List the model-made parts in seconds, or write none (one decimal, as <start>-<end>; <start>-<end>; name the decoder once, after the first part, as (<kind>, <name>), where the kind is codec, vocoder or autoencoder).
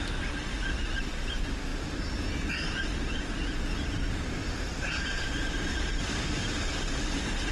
4.4-5.9 (vocoder, BigVGAN v2)